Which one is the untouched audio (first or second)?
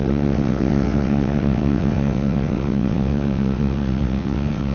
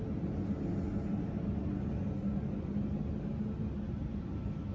second